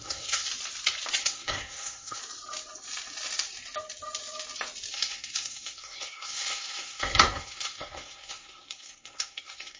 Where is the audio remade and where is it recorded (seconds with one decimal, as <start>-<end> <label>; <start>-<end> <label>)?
0.0-0.5 remade; 0.5-1.2 recorded; 1.2-2.2 remade; 2.2-4.9 recorded; 4.9-9.8 remade

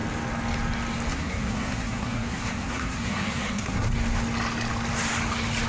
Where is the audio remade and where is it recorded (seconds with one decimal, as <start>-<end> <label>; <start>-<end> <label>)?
0.0-1.1 recorded; 1.1-3.9 remade; 3.9-5.7 recorded